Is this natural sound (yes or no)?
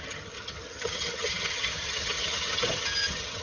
no